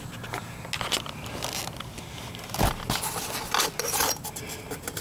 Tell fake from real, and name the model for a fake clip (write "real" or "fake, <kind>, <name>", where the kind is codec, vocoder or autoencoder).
real